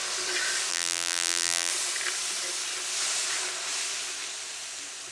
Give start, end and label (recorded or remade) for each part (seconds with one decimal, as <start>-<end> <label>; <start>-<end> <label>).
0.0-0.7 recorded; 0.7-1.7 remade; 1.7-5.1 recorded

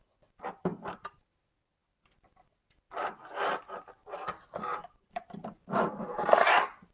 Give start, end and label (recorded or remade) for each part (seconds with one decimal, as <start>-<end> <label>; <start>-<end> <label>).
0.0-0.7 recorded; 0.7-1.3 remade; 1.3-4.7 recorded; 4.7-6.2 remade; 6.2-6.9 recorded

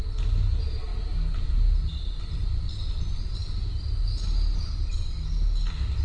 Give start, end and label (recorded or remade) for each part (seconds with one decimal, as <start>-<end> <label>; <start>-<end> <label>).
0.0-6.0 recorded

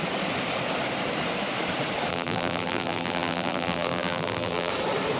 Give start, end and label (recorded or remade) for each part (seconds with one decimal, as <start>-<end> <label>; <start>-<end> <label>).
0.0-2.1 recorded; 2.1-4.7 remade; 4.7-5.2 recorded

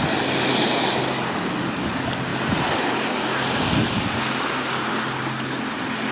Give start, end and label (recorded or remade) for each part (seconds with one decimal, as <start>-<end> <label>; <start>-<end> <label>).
0.0-6.1 recorded

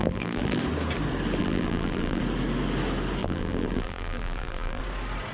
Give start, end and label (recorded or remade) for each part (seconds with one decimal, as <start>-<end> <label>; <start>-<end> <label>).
0.0-0.6 remade; 0.6-1.4 recorded; 1.4-2.2 remade; 2.2-3.2 recorded; 3.2-4.8 remade; 4.8-5.3 recorded